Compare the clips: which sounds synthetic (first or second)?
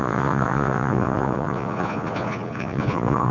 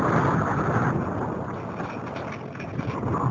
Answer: first